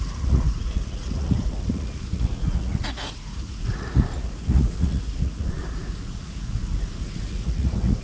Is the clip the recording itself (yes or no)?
no